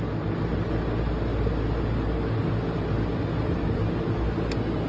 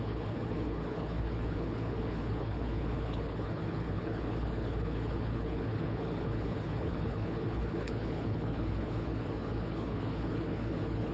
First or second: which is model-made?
second